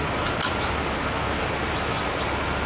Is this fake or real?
real